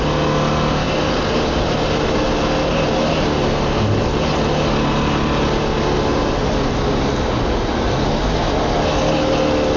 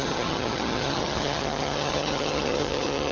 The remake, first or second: second